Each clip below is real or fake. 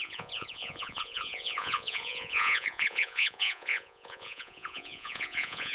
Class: fake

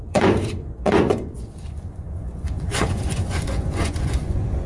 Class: fake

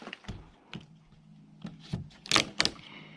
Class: real